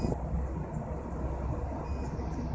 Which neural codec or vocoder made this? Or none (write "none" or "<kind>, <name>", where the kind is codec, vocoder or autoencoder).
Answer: none